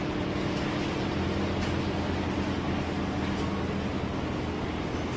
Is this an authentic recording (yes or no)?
yes